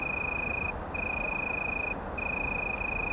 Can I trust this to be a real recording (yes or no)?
yes